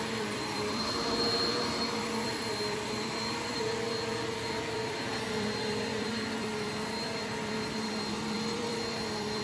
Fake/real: fake